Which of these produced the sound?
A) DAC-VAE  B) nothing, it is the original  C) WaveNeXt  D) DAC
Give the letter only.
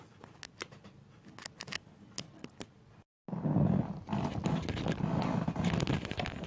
B